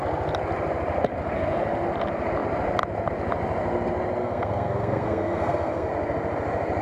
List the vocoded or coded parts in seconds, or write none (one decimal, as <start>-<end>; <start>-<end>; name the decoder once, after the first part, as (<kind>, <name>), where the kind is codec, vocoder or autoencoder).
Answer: 4.2-5.9 (codec, SNAC)